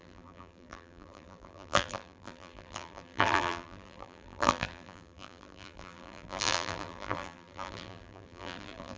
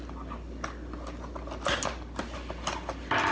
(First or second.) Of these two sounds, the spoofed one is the first